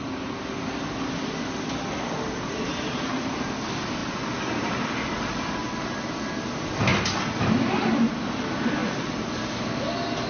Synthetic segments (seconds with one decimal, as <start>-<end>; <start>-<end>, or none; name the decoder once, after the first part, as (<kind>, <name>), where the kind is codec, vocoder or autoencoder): 2.7-3.3 (vocoder, BigVGAN v2); 8.8-9.3